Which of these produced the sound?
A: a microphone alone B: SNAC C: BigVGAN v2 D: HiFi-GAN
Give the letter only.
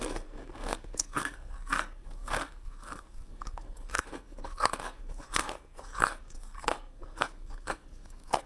B